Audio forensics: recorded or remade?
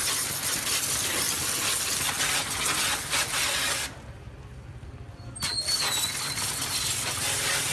recorded